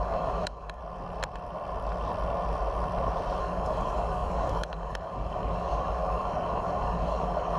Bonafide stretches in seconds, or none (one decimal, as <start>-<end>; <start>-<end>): 0.8-3.4